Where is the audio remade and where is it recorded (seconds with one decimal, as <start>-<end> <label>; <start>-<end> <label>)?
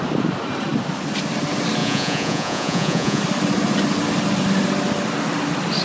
0.0-1.8 recorded; 1.8-3.2 remade; 3.2-5.8 recorded